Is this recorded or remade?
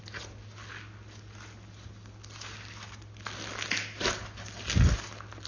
recorded